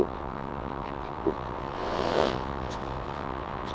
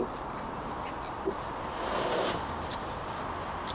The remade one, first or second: first